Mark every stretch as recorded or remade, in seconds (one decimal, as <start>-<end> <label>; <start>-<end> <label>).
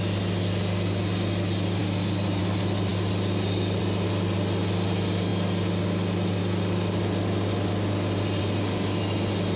0.0-9.6 recorded